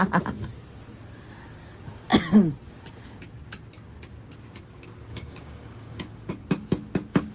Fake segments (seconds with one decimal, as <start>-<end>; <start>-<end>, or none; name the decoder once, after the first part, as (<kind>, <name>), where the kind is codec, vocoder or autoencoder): 5.1-6.3 (codec, DAC)